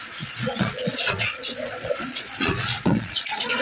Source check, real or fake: fake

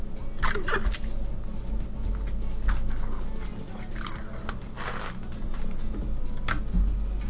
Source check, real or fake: real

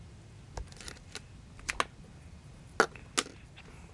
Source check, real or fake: real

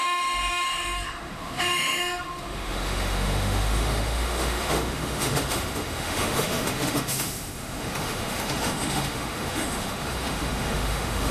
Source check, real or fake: fake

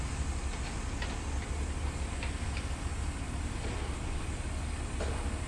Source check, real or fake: real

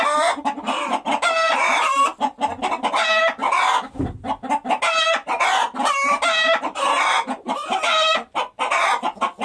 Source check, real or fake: real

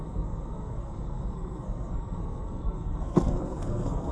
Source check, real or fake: fake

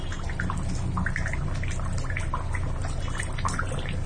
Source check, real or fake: real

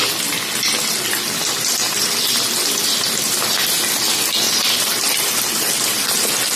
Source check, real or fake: real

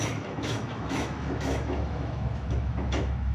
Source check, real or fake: fake